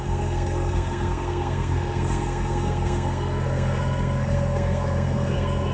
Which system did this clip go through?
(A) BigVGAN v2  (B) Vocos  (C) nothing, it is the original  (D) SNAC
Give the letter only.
D